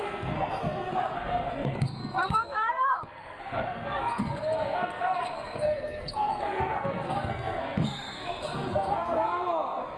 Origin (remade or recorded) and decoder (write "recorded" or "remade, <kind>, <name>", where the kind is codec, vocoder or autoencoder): remade, codec, SNAC